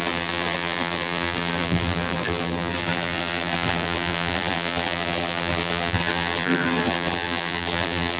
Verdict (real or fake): fake